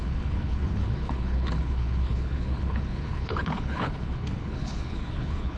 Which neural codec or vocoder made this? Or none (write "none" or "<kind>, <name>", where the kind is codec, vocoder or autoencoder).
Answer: codec, HILCodec